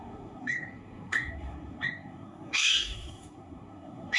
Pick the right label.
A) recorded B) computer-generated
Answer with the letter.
B